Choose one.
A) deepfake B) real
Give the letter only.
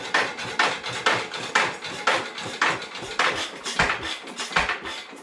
B